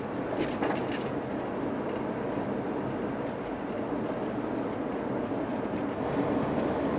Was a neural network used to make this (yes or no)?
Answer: no